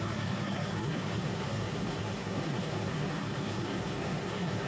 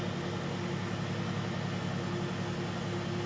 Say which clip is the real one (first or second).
second